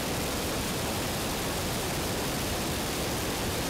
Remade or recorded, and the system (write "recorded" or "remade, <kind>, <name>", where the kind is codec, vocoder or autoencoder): recorded